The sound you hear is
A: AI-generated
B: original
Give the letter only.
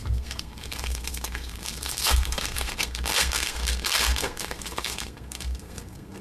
A